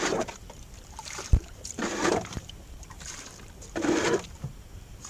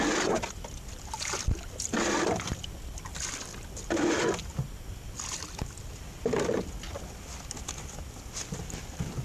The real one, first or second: second